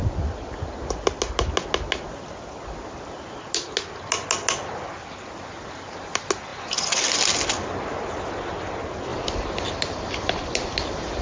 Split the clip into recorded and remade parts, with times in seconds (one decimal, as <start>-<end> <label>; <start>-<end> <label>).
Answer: 0.0-9.1 recorded; 9.1-11.2 remade